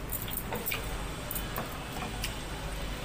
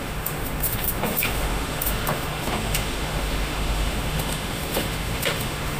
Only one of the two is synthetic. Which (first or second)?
second